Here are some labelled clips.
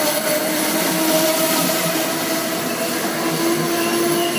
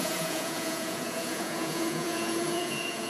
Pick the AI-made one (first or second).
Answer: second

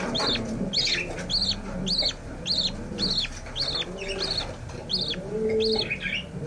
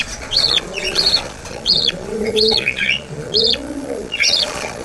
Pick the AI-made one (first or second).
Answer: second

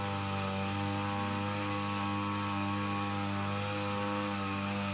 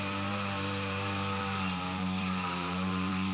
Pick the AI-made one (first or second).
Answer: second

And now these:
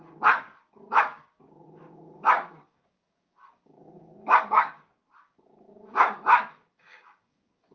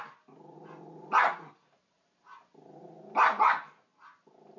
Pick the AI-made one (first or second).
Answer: first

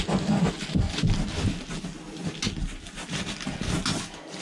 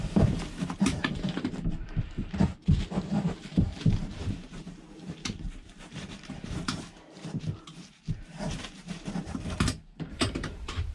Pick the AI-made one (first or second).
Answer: second